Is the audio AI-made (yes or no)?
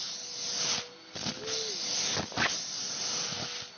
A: no